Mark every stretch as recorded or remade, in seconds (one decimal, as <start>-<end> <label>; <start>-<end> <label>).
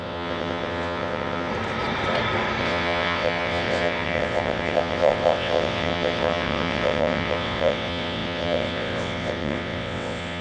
0.0-1.5 remade; 1.5-2.6 recorded; 2.6-10.4 remade